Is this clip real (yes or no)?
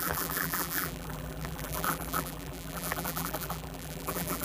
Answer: no